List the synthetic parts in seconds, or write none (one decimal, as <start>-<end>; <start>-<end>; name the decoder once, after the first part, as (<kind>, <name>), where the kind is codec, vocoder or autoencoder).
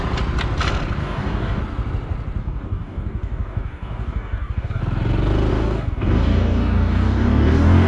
1.0-1.6 (codec, DAC); 2.4-4.8; 5.5-7.9